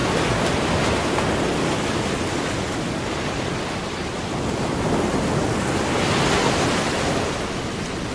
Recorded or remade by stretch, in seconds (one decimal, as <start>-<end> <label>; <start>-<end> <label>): 0.0-8.1 recorded